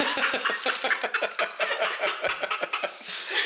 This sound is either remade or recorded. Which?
recorded